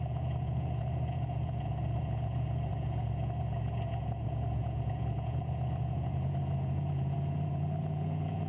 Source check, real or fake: fake